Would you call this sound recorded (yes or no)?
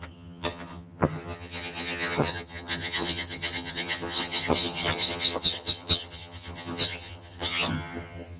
no